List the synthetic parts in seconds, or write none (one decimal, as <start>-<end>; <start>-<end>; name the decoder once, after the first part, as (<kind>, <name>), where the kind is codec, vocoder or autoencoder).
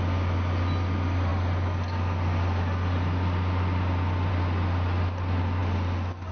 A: none